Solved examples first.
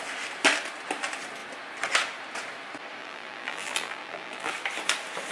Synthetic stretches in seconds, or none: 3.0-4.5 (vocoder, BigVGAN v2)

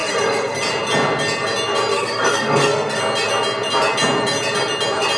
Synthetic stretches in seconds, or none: 0.0-0.6 (codec, SNAC); 1.9-3.0

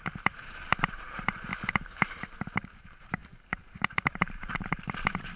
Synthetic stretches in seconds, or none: 0.0-5.4 (vocoder, BigVGAN v2)

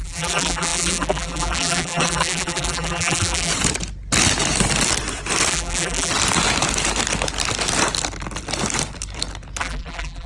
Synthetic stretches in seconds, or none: 0.0-3.5 (vocoder, BigVGAN v2); 5.5-6.1; 9.6-10.3

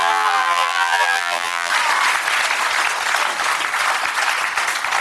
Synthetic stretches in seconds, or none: 0.0-1.7 (vocoder, BigVGAN v2)